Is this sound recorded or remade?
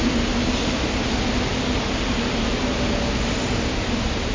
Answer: recorded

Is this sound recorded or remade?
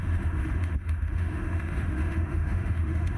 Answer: remade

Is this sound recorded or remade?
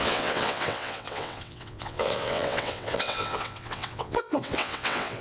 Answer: remade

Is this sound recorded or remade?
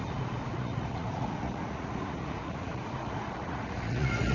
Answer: remade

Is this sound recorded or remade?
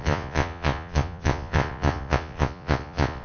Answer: remade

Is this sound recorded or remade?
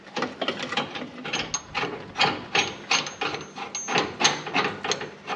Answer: recorded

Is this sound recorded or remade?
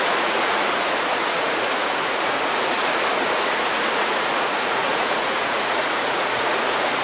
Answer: remade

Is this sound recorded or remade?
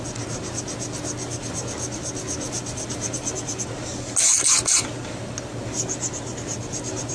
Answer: recorded